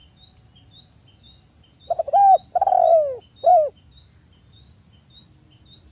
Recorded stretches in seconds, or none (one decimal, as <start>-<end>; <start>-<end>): 0.0-5.9